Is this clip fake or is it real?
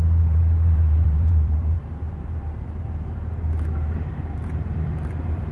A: fake